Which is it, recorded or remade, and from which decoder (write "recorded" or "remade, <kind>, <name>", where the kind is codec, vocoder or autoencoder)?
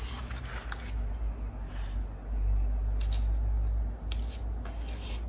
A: recorded